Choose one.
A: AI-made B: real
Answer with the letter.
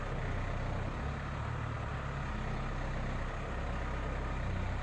B